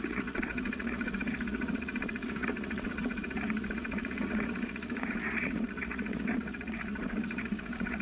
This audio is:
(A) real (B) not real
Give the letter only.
B